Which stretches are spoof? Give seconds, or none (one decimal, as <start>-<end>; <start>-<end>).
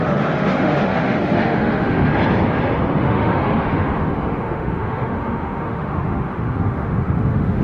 0.0-2.1; 3.0-7.6